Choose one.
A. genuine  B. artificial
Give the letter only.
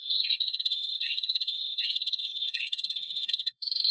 B